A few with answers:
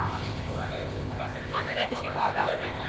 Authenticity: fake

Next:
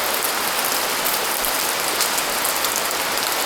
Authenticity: real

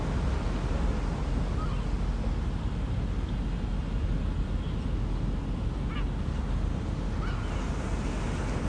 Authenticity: real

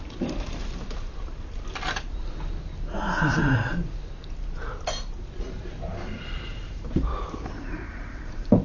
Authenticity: fake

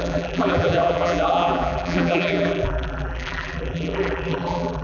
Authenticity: fake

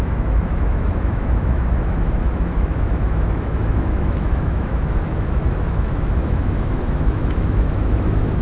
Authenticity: fake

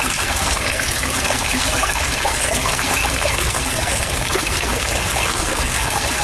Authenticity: fake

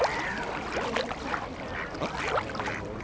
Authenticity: fake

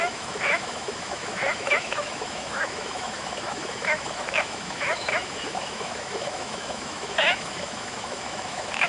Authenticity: fake